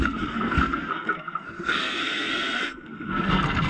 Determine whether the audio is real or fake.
fake